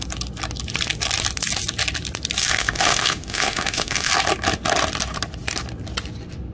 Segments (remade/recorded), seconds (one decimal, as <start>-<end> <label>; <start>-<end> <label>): 0.0-2.4 recorded; 2.4-4.1 remade; 4.1-6.5 recorded